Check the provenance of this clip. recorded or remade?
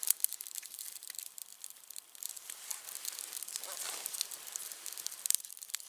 remade